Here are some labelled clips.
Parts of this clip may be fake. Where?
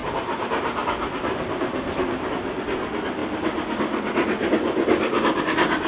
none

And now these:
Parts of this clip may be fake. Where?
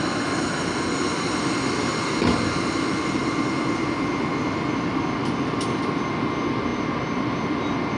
6.7-7.4 (vocoder, BigVGAN v2)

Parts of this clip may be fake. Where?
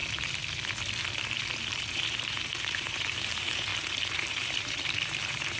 1.7-3.7 (vocoder, BigVGAN v2); 4.3-5.6